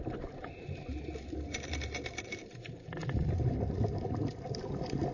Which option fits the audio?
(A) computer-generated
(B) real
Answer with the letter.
B